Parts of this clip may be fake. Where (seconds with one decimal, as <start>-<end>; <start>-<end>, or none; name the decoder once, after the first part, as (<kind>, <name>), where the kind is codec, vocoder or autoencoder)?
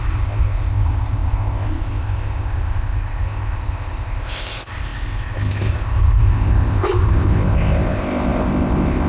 0.0-9.1 (codec, ZipCodec)